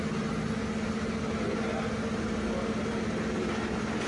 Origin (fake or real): real